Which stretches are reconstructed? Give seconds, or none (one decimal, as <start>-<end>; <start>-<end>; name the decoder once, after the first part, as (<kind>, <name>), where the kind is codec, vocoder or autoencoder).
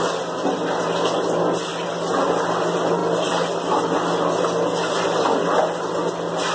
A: none